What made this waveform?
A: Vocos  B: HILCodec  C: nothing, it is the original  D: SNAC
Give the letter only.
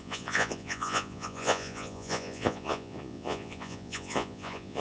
A